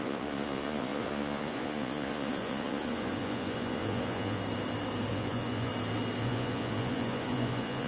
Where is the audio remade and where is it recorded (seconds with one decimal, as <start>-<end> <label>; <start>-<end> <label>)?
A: 0.0-4.4 remade; 4.4-5.1 recorded; 5.1-5.7 remade; 5.7-6.2 recorded; 6.2-7.9 remade

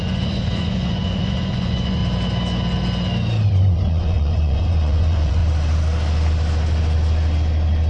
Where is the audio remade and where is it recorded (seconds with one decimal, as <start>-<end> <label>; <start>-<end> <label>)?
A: 0.0-2.0 remade; 2.0-3.5 recorded; 3.5-5.4 remade; 5.4-7.9 recorded

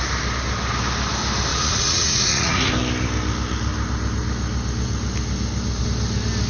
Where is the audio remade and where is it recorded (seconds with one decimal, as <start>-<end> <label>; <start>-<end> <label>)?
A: 0.0-1.5 recorded; 1.5-2.7 remade; 2.7-6.5 recorded

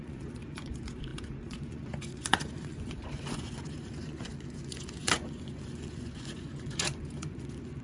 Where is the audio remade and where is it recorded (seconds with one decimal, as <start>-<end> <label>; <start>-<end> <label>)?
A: 0.0-7.8 remade

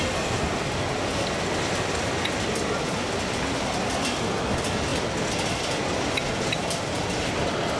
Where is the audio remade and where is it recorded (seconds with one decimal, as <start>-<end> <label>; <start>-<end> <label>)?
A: 0.0-7.8 recorded

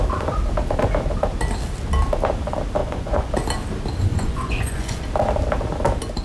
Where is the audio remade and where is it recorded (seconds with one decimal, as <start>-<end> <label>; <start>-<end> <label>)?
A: 0.0-2.8 recorded; 2.8-3.3 remade; 3.3-4.1 recorded; 4.1-5.0 remade; 5.0-6.2 recorded